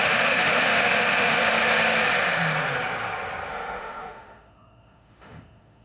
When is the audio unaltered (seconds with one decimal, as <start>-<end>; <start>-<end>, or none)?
1.4-3.5